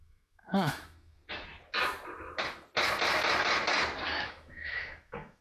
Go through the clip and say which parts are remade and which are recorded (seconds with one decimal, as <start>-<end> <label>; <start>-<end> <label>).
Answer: 0.0-1.2 remade; 1.2-4.2 recorded; 4.2-5.4 remade